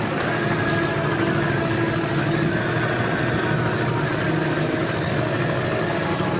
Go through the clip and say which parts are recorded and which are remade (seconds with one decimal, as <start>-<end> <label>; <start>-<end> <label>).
0.0-4.8 recorded; 4.8-5.9 remade; 5.9-6.4 recorded